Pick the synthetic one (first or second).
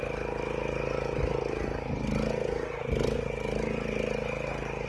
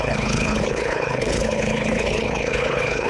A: second